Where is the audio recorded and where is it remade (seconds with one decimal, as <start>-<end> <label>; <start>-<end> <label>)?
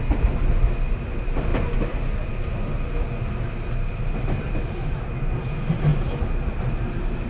0.0-7.3 recorded